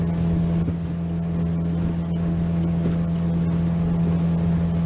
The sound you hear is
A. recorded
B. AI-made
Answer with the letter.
A